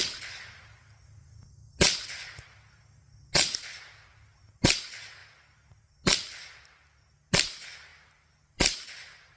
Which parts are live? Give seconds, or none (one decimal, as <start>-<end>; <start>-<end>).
0.0-9.4